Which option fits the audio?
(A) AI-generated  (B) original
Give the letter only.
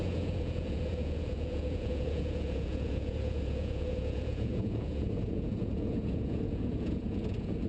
A